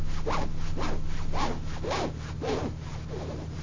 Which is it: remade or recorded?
recorded